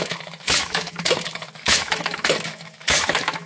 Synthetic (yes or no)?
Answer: yes